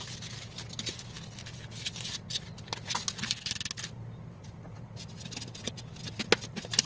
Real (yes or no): yes